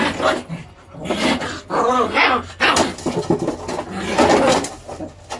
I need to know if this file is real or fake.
real